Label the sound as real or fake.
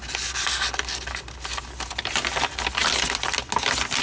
real